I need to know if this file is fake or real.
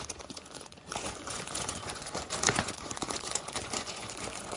fake